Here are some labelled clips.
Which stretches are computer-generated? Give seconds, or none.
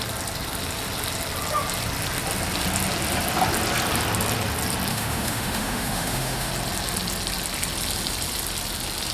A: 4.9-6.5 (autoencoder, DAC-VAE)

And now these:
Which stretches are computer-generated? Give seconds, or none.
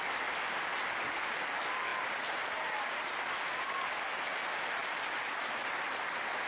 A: none